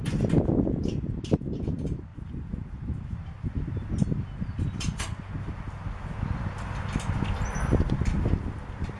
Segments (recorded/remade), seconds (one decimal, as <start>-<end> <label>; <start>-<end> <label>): 0.0-9.0 recorded

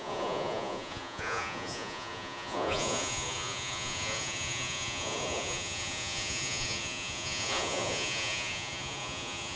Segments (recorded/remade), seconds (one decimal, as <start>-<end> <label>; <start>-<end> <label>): 0.0-9.6 remade